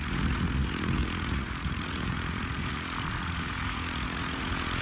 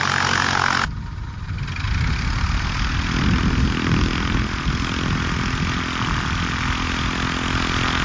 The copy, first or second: first